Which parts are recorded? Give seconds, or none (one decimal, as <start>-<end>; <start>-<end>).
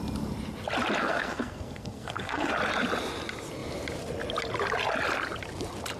0.0-1.0; 2.5-6.0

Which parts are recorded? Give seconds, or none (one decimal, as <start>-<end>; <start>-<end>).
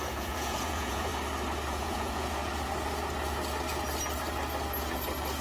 1.1-1.7; 2.4-5.4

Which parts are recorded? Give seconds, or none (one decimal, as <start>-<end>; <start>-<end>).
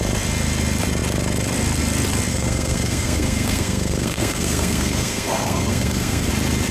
0.0-2.3; 6.3-6.7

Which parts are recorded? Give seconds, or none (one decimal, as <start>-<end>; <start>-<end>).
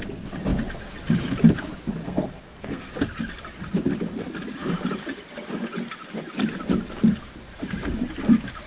0.0-2.0; 2.9-8.7